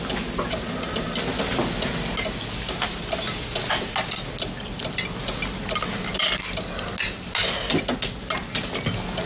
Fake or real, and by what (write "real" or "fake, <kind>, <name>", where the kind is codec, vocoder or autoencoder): real